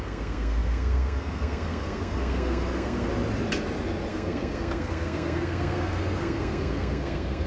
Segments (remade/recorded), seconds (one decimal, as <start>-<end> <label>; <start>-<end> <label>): 0.0-3.1 remade; 3.1-4.1 recorded; 4.1-7.5 remade